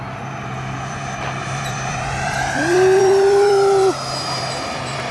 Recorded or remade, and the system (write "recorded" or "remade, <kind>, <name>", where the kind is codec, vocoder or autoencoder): remade, vocoder, BigVGAN v2